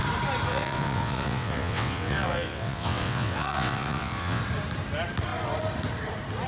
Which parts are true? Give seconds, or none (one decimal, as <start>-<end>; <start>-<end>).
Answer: 0.0-0.5; 4.4-6.5